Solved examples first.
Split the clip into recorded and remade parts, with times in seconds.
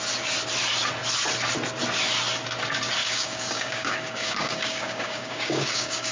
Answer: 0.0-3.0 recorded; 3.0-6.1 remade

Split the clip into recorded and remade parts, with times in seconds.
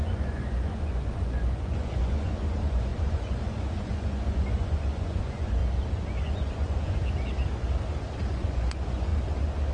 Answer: 0.0-5.6 remade; 5.6-6.2 recorded; 6.2-7.0 remade; 7.0-8.3 recorded; 8.3-9.1 remade; 9.1-9.7 recorded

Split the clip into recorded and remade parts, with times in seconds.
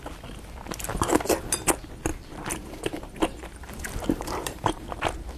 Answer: 0.0-2.1 recorded; 2.1-5.4 remade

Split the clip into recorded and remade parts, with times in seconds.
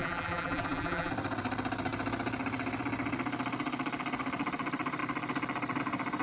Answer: 0.0-1.1 remade; 1.1-6.2 recorded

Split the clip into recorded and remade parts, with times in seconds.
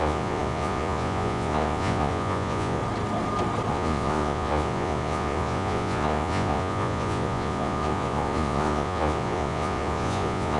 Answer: 0.0-2.8 remade; 2.8-3.7 recorded; 3.7-10.6 remade